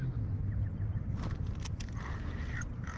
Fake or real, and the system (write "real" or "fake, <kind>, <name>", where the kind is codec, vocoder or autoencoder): real